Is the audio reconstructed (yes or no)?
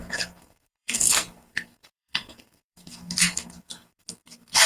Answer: yes